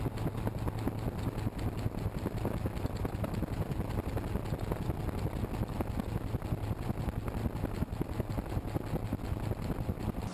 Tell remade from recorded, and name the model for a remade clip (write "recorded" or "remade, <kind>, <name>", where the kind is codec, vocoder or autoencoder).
recorded